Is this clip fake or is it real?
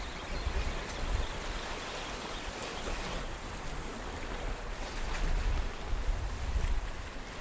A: real